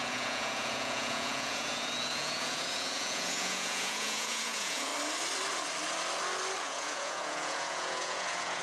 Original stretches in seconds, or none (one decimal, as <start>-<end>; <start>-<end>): 4.9-6.6